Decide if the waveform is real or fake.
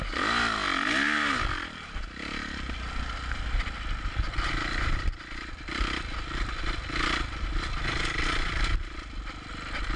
real